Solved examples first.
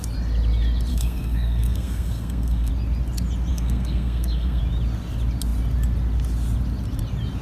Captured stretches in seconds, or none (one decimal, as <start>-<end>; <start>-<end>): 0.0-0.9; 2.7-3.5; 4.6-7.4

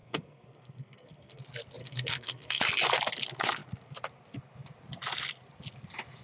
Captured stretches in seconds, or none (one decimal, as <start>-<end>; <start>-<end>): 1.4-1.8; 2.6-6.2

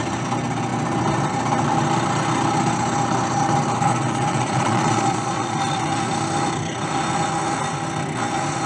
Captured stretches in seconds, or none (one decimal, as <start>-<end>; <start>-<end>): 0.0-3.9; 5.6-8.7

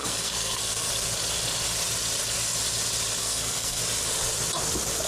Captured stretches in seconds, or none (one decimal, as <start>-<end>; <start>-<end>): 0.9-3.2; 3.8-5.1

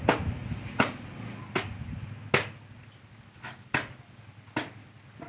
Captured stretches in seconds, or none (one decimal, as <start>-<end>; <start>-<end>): 0.0-5.3

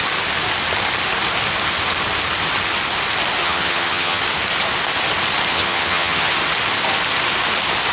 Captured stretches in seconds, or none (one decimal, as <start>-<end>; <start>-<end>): 0.0-3.4; 4.2-5.5; 6.3-7.9